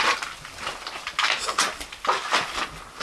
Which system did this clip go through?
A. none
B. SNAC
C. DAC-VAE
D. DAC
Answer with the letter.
A